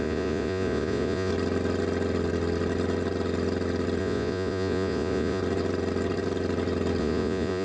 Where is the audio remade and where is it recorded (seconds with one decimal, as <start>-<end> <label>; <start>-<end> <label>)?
0.0-1.3 remade; 1.3-4.0 recorded; 4.0-5.4 remade; 5.4-7.0 recorded; 7.0-7.6 remade